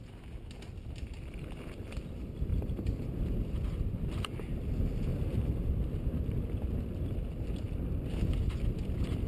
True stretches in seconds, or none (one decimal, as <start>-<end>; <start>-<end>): 0.0-2.5; 3.1-5.1; 5.7-9.3